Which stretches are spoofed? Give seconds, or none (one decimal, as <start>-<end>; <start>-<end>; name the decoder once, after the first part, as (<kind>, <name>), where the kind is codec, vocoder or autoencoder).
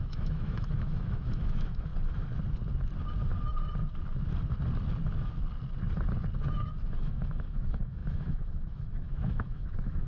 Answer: 0.0-1.9 (autoencoder, DAC-VAE); 7.0-10.1